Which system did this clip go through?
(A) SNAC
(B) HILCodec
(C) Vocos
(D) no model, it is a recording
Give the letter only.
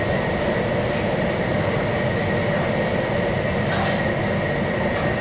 D